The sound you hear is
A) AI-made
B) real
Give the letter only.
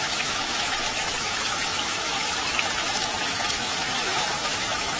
A